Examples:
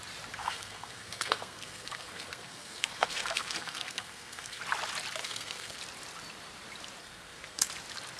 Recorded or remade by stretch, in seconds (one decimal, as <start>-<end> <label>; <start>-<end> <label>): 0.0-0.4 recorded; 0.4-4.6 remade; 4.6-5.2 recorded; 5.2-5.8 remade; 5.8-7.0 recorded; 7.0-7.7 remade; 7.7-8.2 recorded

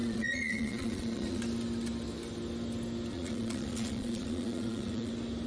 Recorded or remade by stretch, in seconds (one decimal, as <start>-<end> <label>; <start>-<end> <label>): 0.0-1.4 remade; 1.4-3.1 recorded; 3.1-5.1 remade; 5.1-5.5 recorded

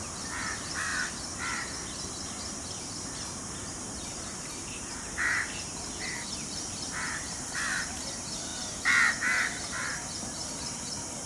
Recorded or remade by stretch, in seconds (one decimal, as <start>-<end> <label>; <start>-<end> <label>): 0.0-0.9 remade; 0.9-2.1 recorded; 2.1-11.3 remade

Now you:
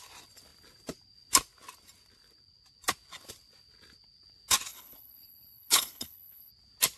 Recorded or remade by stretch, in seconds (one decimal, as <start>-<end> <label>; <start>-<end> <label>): 0.0-4.7 recorded; 4.7-6.5 remade; 6.5-7.0 recorded

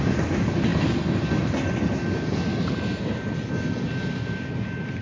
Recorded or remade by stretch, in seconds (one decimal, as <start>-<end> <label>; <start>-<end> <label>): 0.0-5.0 recorded

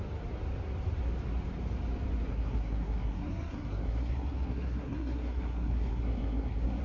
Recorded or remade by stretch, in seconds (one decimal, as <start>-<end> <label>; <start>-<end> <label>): 0.0-2.3 recorded; 2.3-6.8 remade

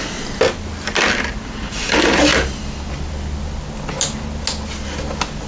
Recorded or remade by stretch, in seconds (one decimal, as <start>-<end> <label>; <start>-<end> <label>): 0.0-5.5 recorded